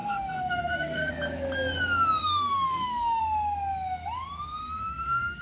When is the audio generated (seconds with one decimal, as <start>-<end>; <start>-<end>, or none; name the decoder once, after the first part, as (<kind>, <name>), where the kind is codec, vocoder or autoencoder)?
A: 0.0-1.1 (autoencoder, DAC-VAE); 2.2-3.2; 4.6-5.4

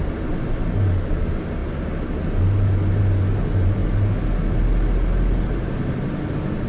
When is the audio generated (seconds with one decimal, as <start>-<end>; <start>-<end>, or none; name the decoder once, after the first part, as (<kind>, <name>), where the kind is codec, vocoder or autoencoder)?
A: none